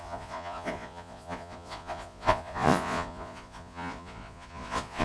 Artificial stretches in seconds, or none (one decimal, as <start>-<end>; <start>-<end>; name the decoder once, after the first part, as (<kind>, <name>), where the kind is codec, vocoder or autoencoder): 0.0-5.0 (vocoder, Vocos)